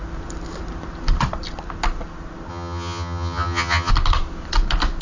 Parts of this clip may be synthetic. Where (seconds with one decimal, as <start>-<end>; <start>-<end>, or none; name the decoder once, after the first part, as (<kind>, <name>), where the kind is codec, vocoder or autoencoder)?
2.5-3.9 (vocoder, HiFi-GAN)

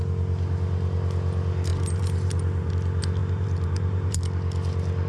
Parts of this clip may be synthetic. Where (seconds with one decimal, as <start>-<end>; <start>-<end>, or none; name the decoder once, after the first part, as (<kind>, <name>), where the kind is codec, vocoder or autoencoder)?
1.7-2.7 (vocoder, BigVGAN v2); 3.2-4.2